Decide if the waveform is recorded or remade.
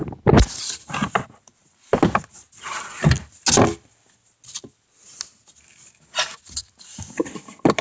recorded